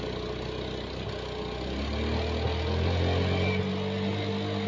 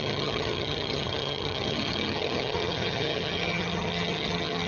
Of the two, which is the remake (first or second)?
second